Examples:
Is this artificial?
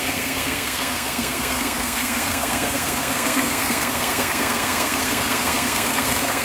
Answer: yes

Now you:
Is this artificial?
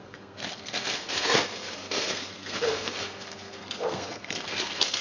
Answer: yes